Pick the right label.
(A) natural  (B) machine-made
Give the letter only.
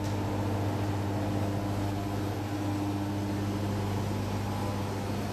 A